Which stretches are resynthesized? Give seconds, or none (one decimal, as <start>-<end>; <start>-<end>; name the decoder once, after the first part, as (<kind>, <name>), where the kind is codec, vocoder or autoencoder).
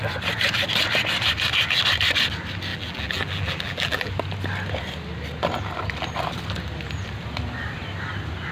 2.7-4.1 (vocoder, BigVGAN v2)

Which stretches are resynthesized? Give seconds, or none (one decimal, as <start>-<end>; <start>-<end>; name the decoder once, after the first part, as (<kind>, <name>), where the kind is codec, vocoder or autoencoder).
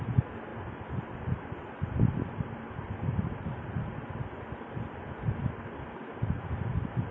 none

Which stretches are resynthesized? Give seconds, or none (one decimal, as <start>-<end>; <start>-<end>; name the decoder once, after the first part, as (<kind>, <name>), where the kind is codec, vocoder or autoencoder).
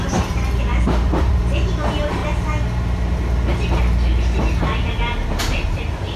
0.0-0.7 (vocoder, BigVGAN v2); 1.2-2.2; 5.4-6.2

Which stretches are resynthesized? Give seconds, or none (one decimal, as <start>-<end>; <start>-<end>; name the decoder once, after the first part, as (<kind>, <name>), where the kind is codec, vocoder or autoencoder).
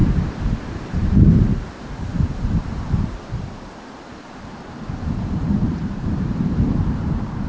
0.0-7.5 (vocoder, BigVGAN v2)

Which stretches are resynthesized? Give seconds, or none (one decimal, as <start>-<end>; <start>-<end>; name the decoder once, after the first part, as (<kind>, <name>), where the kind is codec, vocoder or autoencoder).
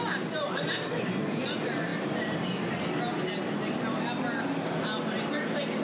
none